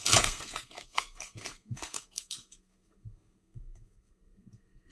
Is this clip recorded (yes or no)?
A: no